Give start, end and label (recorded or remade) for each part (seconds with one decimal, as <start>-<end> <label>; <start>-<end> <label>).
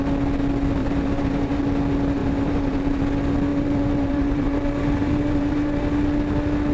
0.0-0.8 recorded; 0.8-1.6 remade; 1.6-2.2 recorded; 2.2-3.0 remade; 3.0-3.5 recorded; 3.5-5.8 remade; 5.8-6.7 recorded